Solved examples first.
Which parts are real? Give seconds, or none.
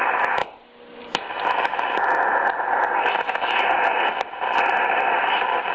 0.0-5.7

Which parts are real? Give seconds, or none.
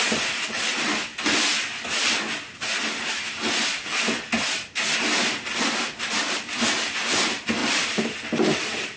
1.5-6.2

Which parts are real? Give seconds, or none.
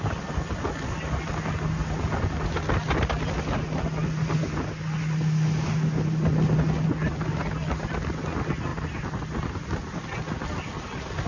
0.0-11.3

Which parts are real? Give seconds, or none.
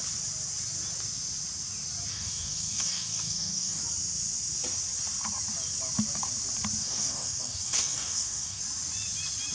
0.0-2.1; 3.8-6.8; 8.6-9.5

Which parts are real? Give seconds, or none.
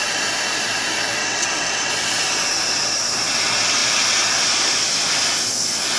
0.0-1.2; 1.9-6.0